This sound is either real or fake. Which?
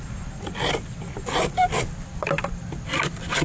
real